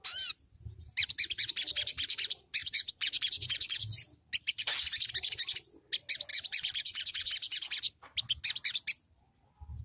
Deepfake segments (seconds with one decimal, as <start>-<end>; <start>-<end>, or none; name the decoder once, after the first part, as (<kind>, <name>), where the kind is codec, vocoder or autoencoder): 2.6-3.8 (vocoder, Vocos); 6.3-7.3